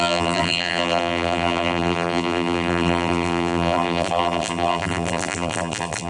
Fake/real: fake